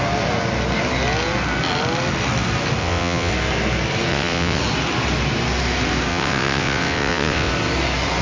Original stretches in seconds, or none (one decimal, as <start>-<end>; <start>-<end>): 0.0-2.8; 3.3-4.1; 4.6-6.1; 7.5-8.2